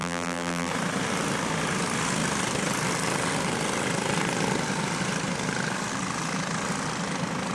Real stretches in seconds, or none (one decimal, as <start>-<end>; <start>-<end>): 0.7-7.5